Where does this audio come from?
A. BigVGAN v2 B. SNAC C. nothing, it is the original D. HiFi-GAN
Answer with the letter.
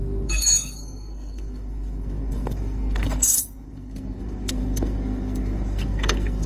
B